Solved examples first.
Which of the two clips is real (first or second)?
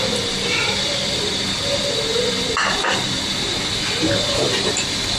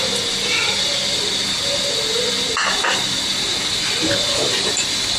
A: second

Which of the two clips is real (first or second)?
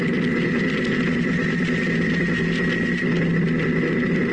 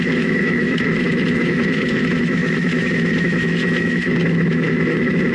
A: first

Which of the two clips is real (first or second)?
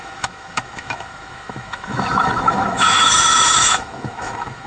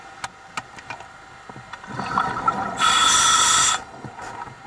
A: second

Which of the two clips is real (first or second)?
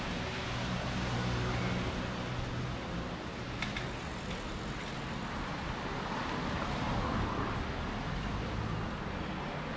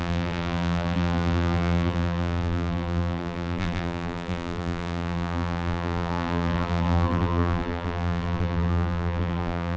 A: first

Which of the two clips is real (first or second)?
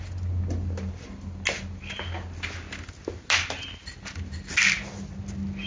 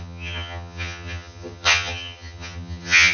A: first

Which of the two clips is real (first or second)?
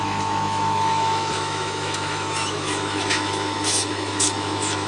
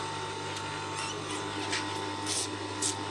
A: second